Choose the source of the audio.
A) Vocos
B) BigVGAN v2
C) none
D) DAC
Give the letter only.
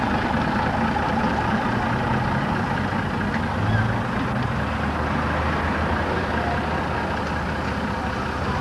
C